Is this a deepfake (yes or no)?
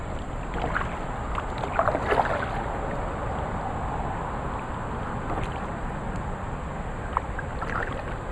no